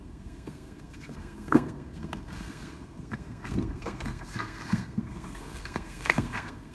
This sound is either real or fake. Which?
fake